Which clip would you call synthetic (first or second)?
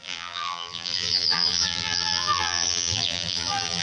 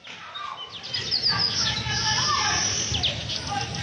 first